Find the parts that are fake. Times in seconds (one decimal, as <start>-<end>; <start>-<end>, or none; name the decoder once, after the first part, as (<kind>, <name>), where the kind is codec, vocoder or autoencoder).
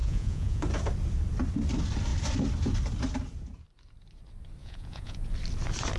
0.0-0.6 (vocoder, Vocos); 4.6-5.3